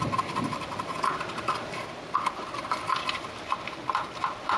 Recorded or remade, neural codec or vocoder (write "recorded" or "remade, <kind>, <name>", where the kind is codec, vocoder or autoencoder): recorded